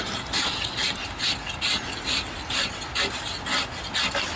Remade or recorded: recorded